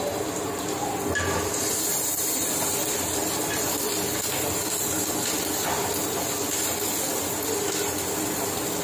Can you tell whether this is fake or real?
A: real